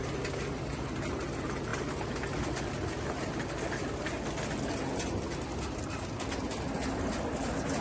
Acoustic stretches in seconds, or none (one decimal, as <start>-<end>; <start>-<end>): 0.0-7.8